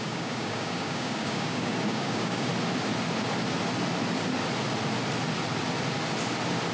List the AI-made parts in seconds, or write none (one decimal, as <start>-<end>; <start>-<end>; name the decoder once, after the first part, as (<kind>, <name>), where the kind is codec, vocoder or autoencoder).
0.0-2.5 (codec, DAC)